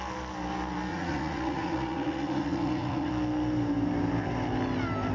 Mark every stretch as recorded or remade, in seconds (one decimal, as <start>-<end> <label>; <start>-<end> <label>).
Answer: 0.0-0.9 recorded; 0.9-3.1 remade; 3.1-5.1 recorded